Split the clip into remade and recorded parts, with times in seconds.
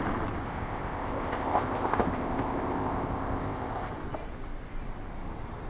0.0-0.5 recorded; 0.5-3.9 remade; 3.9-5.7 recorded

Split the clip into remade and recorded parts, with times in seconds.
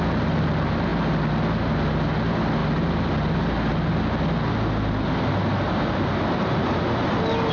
0.0-7.5 recorded